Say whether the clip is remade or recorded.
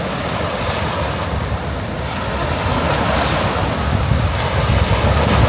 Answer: recorded